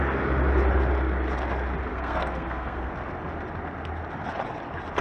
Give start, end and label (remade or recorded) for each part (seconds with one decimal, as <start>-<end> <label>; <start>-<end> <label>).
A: 0.0-1.9 recorded; 1.9-2.9 remade; 2.9-5.0 recorded